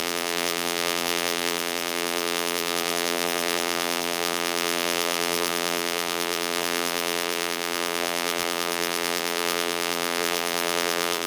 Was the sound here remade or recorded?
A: remade